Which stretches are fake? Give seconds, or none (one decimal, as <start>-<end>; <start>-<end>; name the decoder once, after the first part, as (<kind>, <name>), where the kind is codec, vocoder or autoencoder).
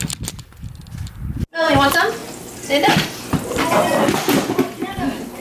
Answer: none